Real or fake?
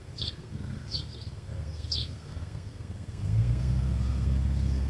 fake